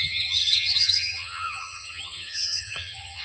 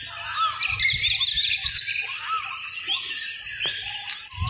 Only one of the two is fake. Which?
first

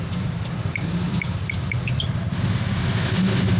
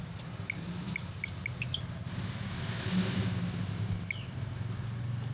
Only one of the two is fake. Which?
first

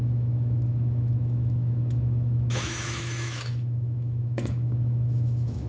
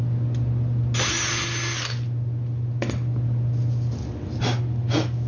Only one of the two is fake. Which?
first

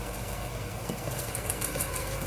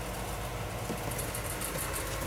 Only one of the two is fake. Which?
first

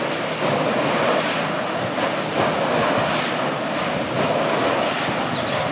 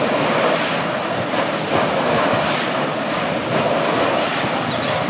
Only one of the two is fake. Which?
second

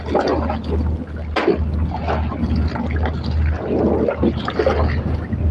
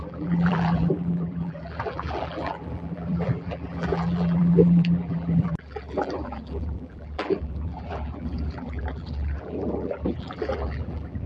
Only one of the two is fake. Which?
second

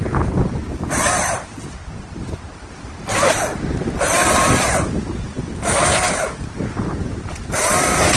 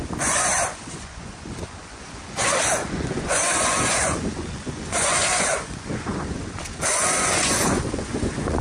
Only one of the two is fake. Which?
second